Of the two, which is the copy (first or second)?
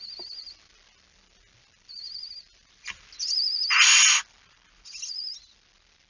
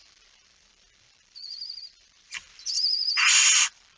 second